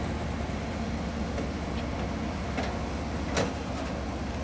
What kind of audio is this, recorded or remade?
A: recorded